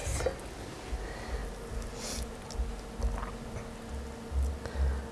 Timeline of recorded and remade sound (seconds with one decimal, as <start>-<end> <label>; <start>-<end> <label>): 0.0-5.1 recorded